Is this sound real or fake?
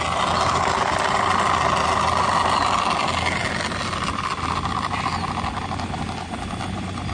real